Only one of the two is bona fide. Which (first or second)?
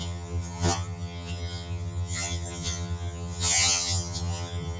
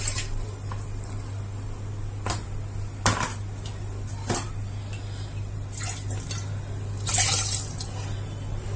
second